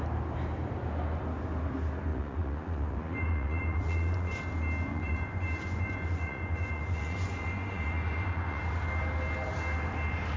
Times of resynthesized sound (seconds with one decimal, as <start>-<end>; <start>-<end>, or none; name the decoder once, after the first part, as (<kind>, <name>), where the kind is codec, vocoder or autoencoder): 2.1-4.4 (vocoder, Vocos); 4.9-8.6

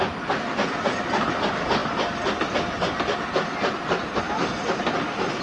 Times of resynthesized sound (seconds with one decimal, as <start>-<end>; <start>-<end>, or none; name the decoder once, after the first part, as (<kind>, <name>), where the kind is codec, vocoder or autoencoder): none

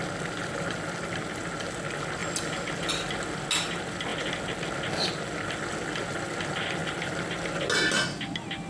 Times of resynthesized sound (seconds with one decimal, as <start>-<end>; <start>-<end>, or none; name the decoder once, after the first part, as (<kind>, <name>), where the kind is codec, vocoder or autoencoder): 6.8-7.3 (vocoder, BigVGAN v2)

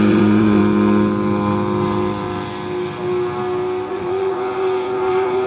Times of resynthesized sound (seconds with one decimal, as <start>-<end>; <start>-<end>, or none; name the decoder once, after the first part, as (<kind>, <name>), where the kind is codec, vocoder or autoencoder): 0.0-0.6 (vocoder, Vocos); 3.9-5.5

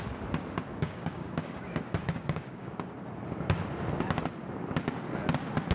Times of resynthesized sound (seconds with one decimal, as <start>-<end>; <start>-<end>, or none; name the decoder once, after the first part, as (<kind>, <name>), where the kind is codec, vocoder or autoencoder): 0.7-2.7 (codec, DAC)